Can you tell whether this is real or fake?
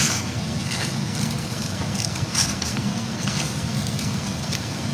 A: fake